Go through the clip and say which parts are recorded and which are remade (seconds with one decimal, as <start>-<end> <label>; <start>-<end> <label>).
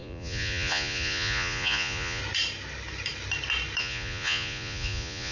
0.0-2.2 remade; 2.2-3.8 recorded; 3.8-5.3 remade